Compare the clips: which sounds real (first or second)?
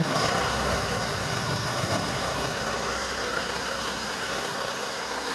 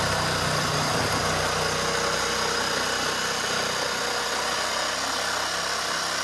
second